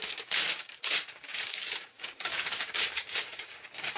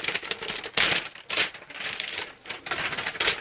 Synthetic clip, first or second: first